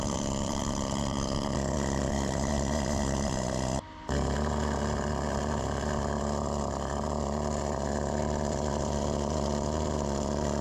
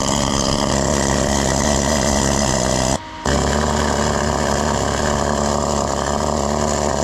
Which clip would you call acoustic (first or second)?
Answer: second